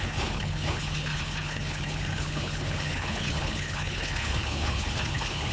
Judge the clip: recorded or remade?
remade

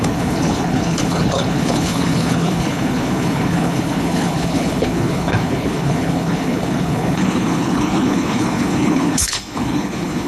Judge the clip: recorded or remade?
remade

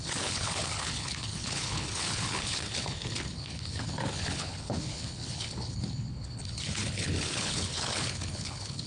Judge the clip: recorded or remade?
remade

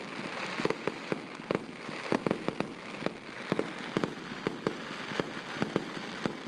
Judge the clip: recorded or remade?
recorded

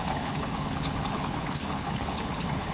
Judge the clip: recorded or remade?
remade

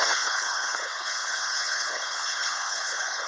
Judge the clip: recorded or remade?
remade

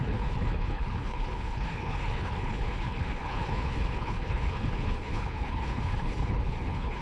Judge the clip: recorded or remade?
remade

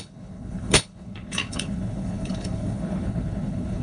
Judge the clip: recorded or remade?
remade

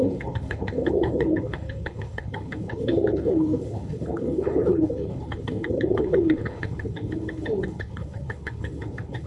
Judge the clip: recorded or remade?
remade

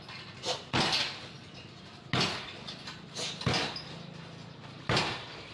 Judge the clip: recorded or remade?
recorded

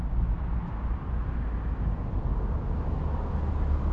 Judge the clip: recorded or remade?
recorded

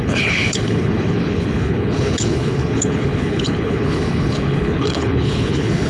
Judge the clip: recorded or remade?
remade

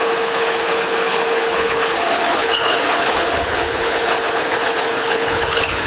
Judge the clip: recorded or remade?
remade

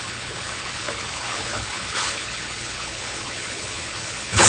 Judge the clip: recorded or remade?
remade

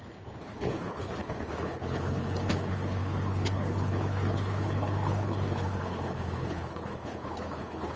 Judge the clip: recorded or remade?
remade